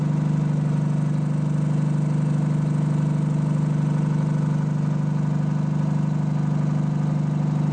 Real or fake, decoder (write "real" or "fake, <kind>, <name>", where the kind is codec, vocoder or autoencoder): real